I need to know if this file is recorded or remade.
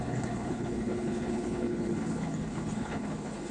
remade